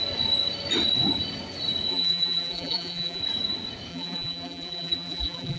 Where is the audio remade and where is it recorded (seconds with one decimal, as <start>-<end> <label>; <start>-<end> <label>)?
0.0-1.9 recorded; 1.9-3.2 remade; 3.2-3.9 recorded; 3.9-5.6 remade